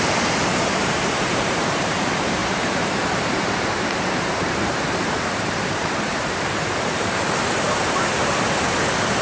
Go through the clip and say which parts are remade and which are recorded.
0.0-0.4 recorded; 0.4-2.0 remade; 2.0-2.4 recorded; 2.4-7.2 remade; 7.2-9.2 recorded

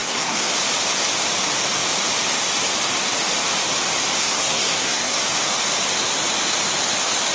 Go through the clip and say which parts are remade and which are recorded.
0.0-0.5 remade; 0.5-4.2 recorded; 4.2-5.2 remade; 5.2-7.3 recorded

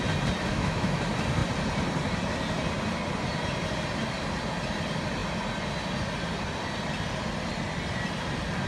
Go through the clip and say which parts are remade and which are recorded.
0.0-0.5 recorded; 0.5-1.0 remade; 1.0-8.7 recorded

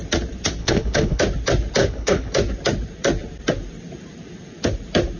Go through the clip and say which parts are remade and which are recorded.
0.0-0.6 recorded; 0.6-1.2 remade; 1.2-1.8 recorded; 1.8-2.3 remade; 2.3-5.2 recorded